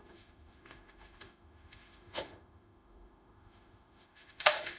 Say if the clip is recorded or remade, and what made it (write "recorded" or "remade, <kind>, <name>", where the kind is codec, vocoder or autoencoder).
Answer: remade, autoencoder, DAC-VAE